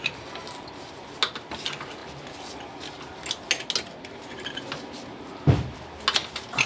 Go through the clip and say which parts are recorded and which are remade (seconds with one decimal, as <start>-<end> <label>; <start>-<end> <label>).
0.0-6.7 recorded